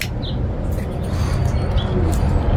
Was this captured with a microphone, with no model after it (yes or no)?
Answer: yes